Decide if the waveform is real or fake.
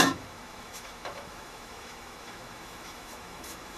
fake